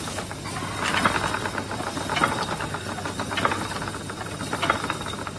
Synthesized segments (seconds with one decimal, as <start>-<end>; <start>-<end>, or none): none